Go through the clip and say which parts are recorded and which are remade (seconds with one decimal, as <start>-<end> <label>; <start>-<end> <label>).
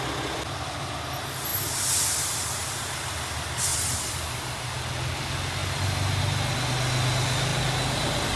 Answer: 0.0-3.7 recorded; 3.7-4.7 remade; 4.7-8.4 recorded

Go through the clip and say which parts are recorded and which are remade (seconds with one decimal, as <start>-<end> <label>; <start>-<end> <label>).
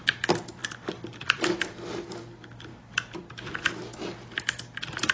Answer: 0.0-0.6 recorded; 0.6-3.3 remade; 3.3-5.1 recorded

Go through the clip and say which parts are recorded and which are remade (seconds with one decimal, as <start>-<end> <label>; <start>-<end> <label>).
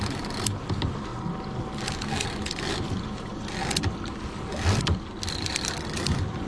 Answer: 0.0-6.5 recorded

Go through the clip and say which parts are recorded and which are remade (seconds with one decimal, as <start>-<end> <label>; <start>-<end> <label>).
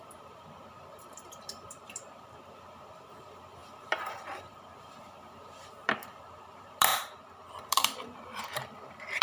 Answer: 0.0-6.9 remade; 6.9-7.5 recorded; 7.5-9.2 remade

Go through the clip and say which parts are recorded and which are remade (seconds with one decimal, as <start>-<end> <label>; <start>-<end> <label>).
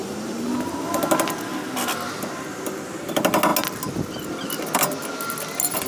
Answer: 0.0-1.0 remade; 1.0-5.9 recorded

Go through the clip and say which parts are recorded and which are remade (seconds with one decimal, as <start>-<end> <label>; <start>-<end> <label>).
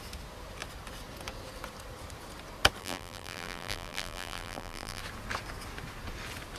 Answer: 0.0-2.8 recorded; 2.8-5.0 remade; 5.0-6.6 recorded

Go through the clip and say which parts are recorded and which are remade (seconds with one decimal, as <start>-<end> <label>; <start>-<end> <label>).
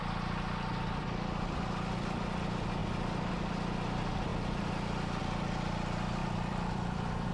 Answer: 0.0-6.2 recorded; 6.2-7.3 remade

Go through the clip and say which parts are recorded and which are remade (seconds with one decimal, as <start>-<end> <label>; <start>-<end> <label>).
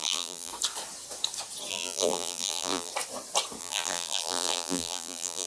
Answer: 0.0-0.5 remade; 0.5-1.7 recorded; 1.7-2.9 remade; 2.9-3.6 recorded; 3.6-5.5 remade